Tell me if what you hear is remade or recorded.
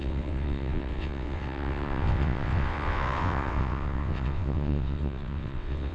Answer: remade